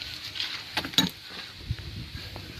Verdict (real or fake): real